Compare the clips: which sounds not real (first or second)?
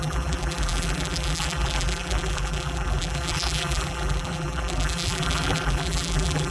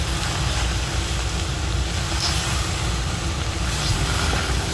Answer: first